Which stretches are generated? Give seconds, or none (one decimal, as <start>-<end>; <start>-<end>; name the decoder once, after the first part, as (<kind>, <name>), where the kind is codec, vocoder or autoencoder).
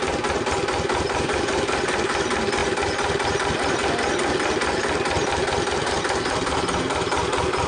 none